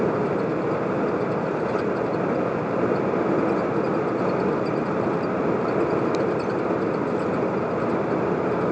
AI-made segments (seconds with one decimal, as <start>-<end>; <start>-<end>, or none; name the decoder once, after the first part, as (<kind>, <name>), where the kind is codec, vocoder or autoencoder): none